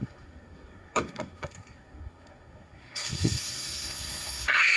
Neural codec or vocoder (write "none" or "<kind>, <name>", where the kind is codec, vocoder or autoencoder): codec, SNAC